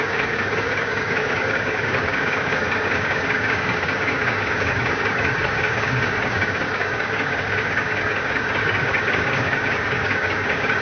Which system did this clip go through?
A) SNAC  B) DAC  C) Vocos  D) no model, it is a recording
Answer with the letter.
B